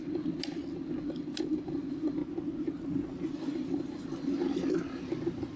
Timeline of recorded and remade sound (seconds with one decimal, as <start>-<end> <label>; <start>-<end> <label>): 0.0-2.2 remade; 2.2-3.3 recorded; 3.3-4.4 remade; 4.4-5.6 recorded